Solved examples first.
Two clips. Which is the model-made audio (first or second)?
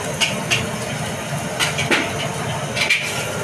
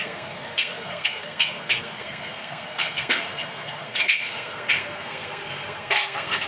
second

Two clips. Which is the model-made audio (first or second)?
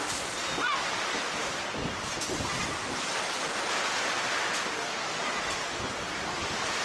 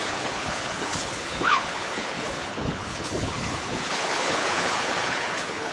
second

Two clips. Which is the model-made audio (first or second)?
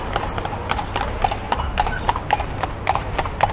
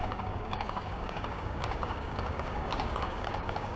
second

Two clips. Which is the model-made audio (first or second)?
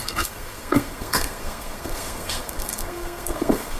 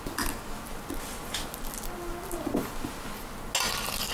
first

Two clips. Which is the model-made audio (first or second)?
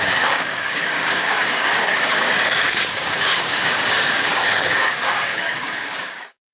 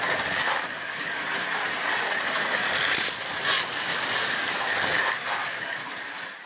first